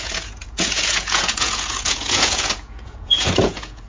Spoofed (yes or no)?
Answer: yes